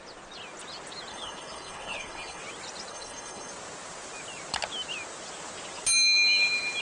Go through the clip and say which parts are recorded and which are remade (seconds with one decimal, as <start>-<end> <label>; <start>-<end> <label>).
0.0-1.1 recorded; 1.1-2.4 remade; 2.4-2.9 recorded; 2.9-3.5 remade; 3.5-6.8 recorded